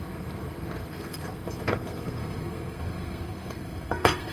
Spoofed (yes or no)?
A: yes